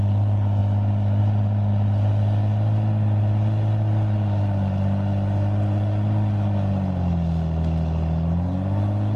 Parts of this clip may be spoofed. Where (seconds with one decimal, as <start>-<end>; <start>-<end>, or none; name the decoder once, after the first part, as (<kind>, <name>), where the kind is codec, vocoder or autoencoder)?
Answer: none